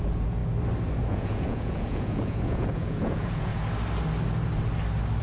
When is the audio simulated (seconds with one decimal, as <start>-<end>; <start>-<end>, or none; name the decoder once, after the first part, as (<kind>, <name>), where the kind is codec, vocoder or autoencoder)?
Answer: 0.0-0.4 (vocoder, Vocos); 1.1-3.5